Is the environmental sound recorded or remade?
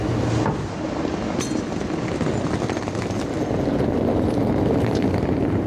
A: recorded